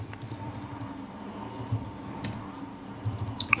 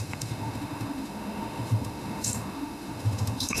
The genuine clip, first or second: first